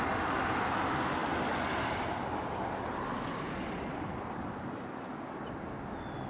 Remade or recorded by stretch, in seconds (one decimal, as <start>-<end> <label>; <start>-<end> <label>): 0.0-6.3 recorded